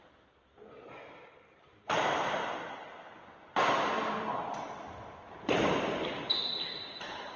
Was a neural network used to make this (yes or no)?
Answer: no